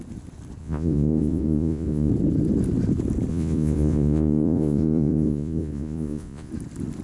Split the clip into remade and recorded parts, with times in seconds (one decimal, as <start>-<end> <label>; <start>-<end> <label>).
0.0-0.6 recorded; 0.6-2.1 remade; 2.1-3.3 recorded; 3.3-6.5 remade; 6.5-7.0 recorded